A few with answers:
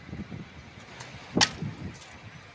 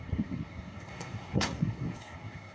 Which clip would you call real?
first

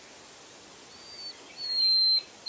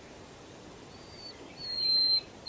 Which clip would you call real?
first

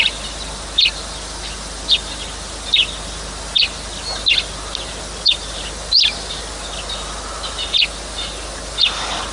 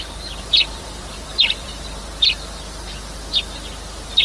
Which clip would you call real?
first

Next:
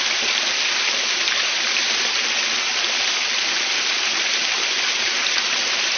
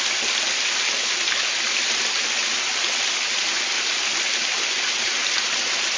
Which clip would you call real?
second